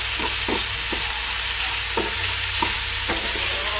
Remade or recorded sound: recorded